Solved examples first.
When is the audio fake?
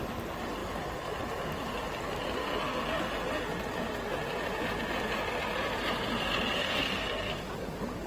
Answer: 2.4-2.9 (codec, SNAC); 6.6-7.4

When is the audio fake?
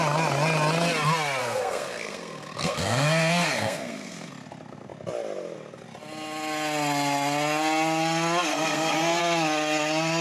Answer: 1.4-4.3 (codec, SNAC); 8.5-9.2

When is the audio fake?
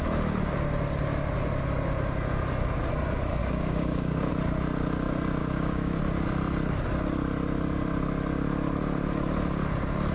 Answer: 3.4-4.3 (codec, DAC); 5.4-6.0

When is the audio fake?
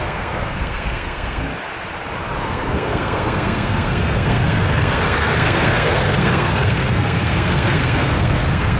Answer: 0.0-1.5 (codec, SNAC); 2.4-8.8